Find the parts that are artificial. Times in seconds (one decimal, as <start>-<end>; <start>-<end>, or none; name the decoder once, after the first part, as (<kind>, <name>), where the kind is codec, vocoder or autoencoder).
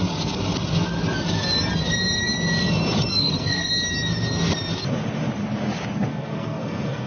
3.1-3.7 (codec, SNAC); 6.1-7.1